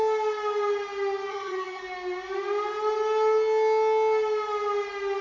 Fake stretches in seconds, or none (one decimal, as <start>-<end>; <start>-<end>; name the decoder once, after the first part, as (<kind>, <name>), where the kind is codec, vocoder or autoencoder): 1.3-1.8 (vocoder, HiFi-GAN)